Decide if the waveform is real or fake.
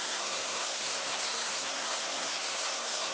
fake